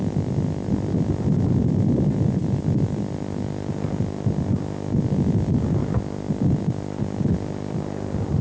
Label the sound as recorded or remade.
recorded